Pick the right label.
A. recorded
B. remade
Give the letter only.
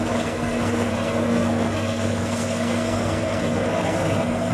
B